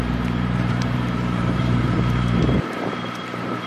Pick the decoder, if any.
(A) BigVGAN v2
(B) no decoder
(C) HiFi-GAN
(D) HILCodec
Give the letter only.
A